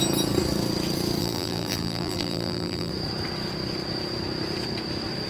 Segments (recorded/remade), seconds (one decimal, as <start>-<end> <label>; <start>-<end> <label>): 0.0-1.2 recorded; 1.2-2.9 remade; 2.9-5.3 recorded